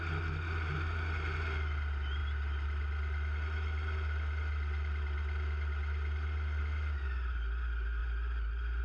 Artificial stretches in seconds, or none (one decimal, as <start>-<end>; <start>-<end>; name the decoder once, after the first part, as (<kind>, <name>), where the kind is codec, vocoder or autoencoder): 8.0-8.8 (vocoder, BigVGAN v2)